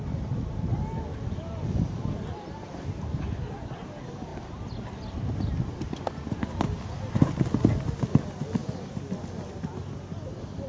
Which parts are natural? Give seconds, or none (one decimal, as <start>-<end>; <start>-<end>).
0.0-10.7